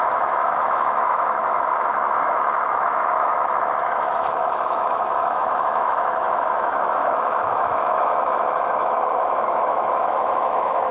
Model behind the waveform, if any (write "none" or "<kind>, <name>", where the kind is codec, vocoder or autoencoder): autoencoder, DAC-VAE